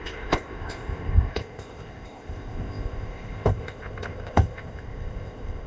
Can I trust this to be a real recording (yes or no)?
no